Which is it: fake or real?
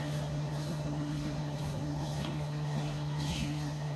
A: fake